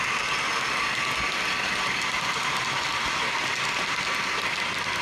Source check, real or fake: real